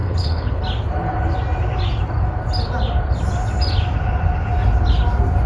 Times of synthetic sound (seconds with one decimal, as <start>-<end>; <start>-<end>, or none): 0.0-0.6